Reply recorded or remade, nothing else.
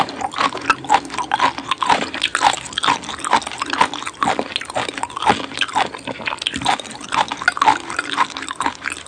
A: recorded